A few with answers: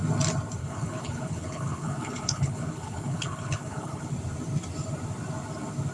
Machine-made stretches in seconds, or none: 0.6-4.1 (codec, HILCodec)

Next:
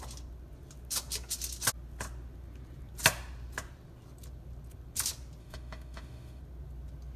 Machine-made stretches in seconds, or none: 5.4-6.4 (autoencoder, DAC-VAE)

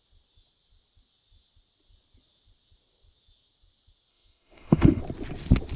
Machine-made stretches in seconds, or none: 4.1-5.0 (autoencoder, DAC-VAE)

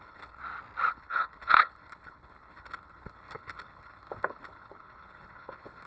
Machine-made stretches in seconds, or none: 0.0-0.4 (codec, HILCodec); 0.9-5.9

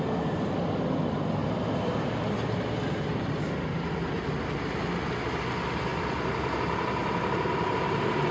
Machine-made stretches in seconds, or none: none

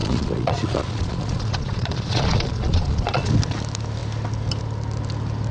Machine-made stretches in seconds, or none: 0.0-3.3 (vocoder, Vocos)